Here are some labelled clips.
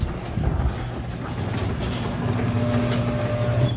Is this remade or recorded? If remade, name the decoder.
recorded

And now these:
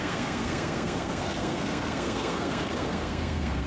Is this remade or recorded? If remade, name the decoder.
remade, codec, SNAC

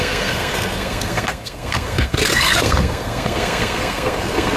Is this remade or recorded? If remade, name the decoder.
remade, codec, SNAC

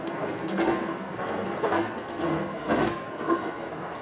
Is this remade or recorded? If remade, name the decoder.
remade, codec, SNAC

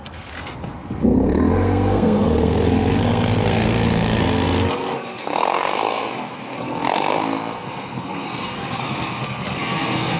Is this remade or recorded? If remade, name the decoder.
remade, codec, SNAC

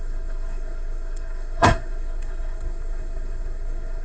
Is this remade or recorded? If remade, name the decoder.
remade, codec, SNAC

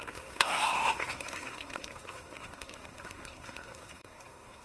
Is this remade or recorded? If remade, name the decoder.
remade, codec, SNAC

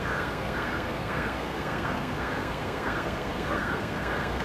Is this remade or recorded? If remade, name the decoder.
remade, codec, SNAC